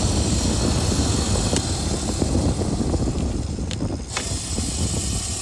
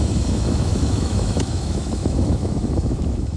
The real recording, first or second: first